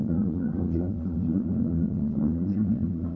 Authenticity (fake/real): fake